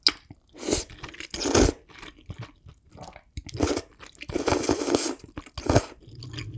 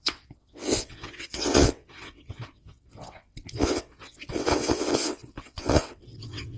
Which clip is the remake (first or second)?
second